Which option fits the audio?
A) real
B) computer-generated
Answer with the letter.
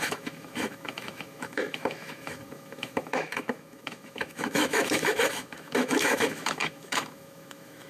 B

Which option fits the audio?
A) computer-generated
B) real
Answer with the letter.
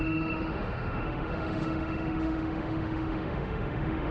A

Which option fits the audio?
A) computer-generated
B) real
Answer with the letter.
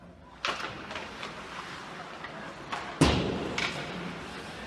B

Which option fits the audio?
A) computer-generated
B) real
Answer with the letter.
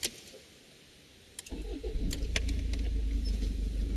B